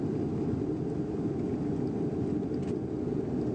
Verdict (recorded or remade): recorded